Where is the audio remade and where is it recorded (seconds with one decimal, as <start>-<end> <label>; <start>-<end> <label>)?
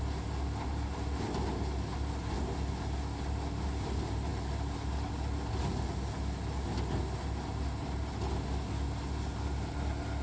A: 0.0-10.2 recorded